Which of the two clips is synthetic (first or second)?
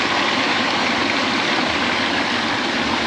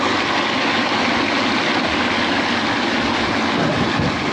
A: first